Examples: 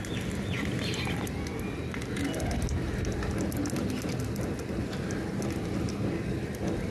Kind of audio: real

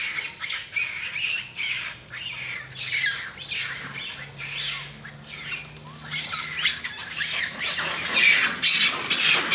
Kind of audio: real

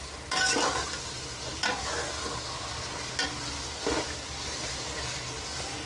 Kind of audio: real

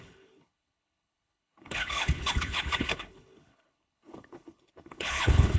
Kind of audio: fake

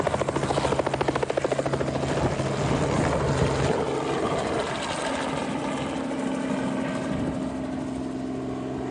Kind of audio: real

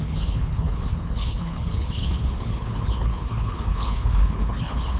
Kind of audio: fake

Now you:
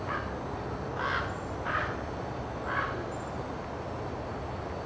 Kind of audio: real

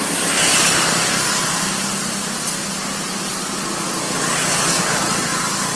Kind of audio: real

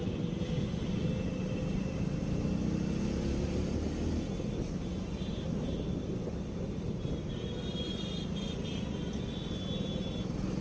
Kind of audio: real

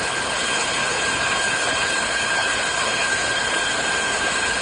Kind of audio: fake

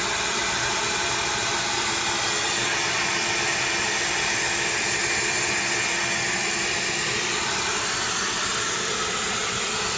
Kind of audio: real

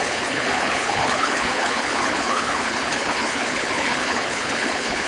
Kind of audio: fake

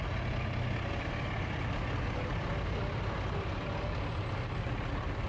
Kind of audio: real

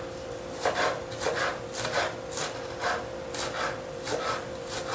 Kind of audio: real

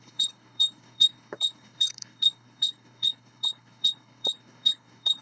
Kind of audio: fake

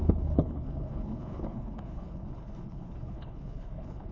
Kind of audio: fake